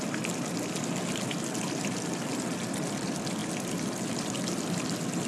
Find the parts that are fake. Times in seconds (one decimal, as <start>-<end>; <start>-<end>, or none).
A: none